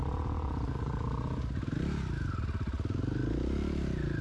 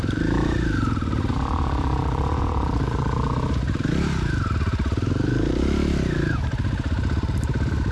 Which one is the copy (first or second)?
second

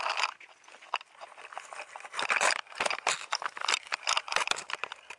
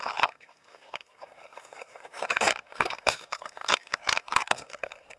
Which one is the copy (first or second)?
second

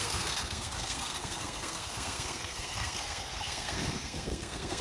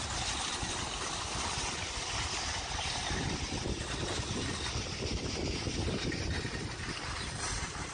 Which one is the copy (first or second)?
first